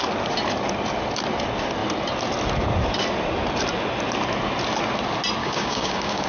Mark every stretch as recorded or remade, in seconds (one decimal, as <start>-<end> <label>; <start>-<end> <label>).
0.0-5.4 recorded; 5.4-6.3 remade